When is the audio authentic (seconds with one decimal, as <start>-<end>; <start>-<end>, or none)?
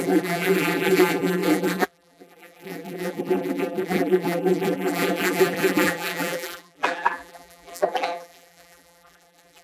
none